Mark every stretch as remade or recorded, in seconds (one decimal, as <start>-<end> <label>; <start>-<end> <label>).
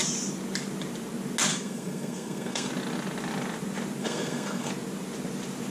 0.0-1.5 recorded; 1.5-2.7 remade; 2.7-4.0 recorded; 4.0-4.7 remade; 4.7-5.7 recorded